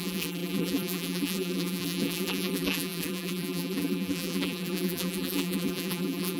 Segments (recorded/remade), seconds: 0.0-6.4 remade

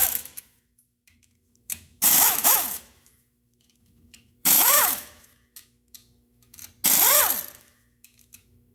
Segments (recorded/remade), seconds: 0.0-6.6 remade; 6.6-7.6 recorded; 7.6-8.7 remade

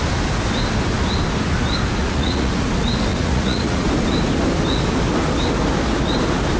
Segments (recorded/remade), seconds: 0.0-2.0 recorded; 2.0-2.7 remade; 2.7-3.1 recorded; 3.1-3.9 remade; 3.9-6.6 recorded

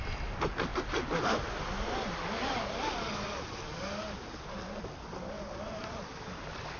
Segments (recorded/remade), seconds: 0.0-6.8 recorded

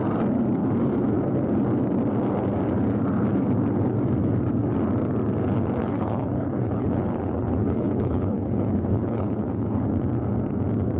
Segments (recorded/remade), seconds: 0.0-5.8 recorded; 5.8-9.8 remade; 9.8-11.0 recorded

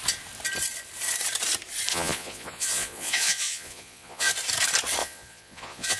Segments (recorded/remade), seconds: 0.0-1.9 recorded; 1.9-4.3 remade; 4.3-5.0 recorded; 5.0-6.0 remade